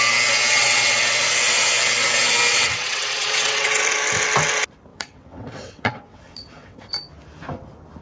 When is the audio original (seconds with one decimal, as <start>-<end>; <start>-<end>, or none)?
0.0-0.5; 1.0-2.5; 3.8-4.9; 6.9-8.0